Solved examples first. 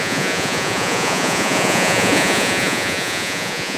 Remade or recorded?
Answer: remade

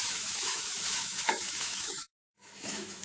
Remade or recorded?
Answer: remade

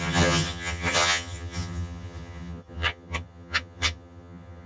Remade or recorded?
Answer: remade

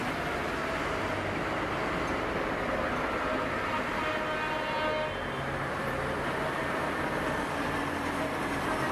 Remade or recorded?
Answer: recorded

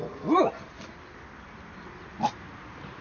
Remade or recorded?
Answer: recorded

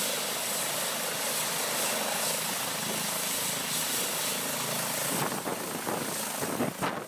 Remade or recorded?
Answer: recorded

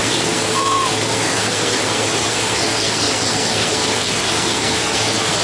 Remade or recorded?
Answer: remade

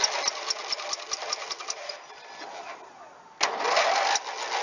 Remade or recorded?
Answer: recorded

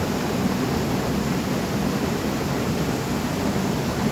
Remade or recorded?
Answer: recorded